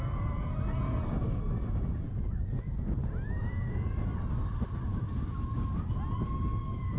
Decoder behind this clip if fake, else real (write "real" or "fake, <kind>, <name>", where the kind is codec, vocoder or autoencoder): real